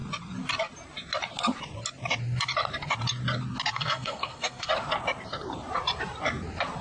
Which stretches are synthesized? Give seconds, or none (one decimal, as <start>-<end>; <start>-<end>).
3.7-4.7